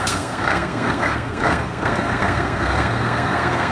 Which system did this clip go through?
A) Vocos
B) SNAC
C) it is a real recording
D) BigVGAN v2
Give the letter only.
B